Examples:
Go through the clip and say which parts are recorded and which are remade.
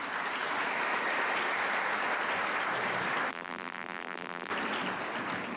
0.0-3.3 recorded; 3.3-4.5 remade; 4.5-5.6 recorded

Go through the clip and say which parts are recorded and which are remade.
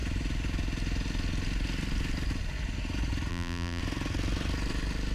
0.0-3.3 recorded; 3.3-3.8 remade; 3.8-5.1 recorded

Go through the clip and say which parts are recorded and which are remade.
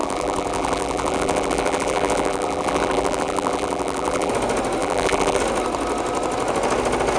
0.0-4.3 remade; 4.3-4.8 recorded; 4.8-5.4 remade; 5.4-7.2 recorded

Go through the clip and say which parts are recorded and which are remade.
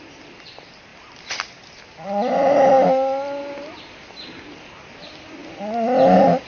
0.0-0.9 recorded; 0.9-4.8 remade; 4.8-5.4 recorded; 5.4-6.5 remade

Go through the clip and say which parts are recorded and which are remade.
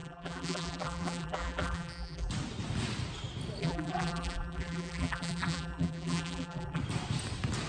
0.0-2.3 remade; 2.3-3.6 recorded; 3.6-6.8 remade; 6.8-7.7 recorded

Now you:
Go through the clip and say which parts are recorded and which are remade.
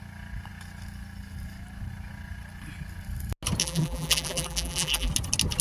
0.0-3.6 recorded; 3.6-5.1 remade; 5.1-5.6 recorded